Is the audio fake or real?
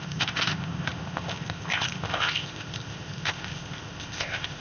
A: fake